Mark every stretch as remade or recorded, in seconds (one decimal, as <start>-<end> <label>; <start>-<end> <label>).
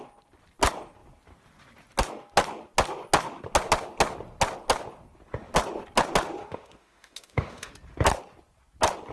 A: 0.0-6.4 recorded; 6.4-7.7 remade; 7.7-9.1 recorded